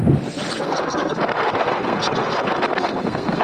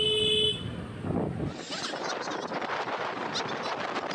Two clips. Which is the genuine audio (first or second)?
second